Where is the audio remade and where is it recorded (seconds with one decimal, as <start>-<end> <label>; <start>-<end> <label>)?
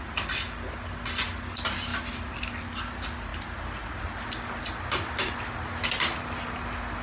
0.0-3.3 recorded; 3.3-4.0 remade; 4.0-7.0 recorded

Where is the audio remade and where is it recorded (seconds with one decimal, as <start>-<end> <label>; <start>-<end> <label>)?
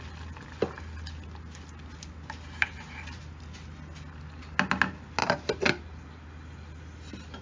0.0-7.4 recorded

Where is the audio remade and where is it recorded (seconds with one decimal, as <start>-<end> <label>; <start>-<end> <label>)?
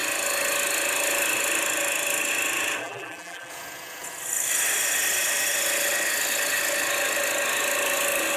0.0-2.8 recorded; 2.8-3.5 remade; 3.5-8.4 recorded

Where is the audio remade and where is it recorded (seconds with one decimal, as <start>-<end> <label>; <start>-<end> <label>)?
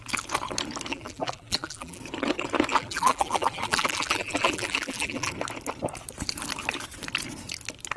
0.0-0.9 recorded; 0.9-2.0 remade; 2.0-2.7 recorded; 2.7-5.3 remade; 5.3-8.0 recorded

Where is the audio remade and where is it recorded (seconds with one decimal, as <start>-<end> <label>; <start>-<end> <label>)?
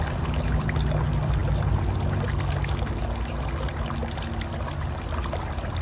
0.0-5.8 recorded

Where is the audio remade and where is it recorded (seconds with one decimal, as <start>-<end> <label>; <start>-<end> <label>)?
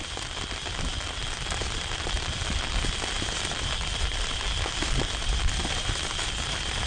0.0-6.9 recorded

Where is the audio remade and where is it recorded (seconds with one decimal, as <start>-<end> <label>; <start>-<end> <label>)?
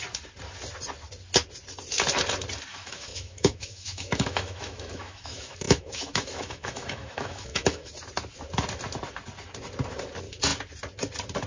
0.0-2.7 recorded; 2.7-7.9 remade; 7.9-11.5 recorded